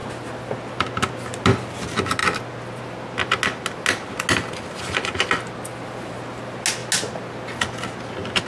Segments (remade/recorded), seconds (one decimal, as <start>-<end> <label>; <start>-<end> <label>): 0.0-8.5 recorded